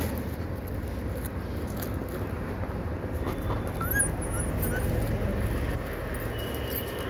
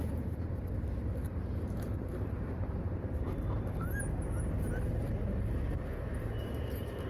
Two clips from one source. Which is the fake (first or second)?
second